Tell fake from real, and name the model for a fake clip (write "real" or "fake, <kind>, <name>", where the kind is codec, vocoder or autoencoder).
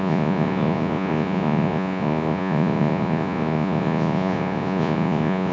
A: fake, vocoder, Vocos